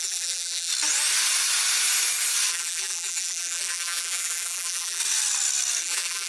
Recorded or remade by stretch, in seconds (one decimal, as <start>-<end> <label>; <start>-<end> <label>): 0.0-0.7 remade; 0.7-2.5 recorded; 2.5-5.0 remade; 5.0-5.8 recorded; 5.8-6.3 remade